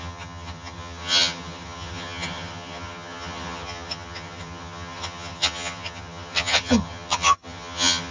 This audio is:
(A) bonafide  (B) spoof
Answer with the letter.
B